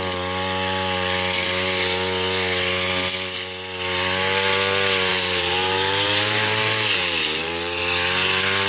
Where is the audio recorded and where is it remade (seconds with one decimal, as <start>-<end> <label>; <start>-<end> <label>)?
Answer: 0.0-5.1 recorded; 5.1-7.8 remade; 7.8-8.7 recorded